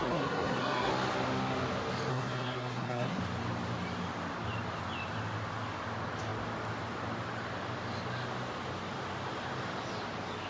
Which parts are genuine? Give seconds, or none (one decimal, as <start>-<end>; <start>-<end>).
0.9-2.1; 3.2-10.5